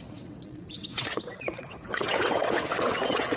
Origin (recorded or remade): remade